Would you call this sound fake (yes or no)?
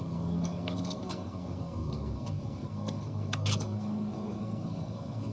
yes